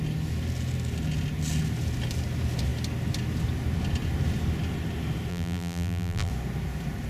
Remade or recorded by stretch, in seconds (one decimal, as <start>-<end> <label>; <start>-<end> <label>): 0.0-5.3 recorded; 5.3-6.3 remade; 6.3-7.1 recorded